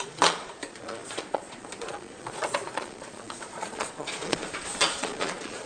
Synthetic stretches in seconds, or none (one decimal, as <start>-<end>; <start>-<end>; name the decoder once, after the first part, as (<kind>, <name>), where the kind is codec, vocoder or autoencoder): 0.0-5.7 (vocoder, Vocos)